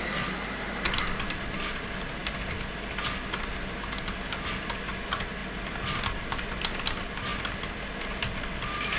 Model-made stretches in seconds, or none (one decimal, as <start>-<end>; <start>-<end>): none